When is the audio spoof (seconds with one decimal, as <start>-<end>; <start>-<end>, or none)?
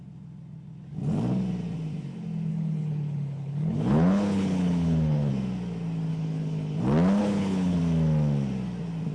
2.5-5.3; 6.1-6.8; 7.2-7.8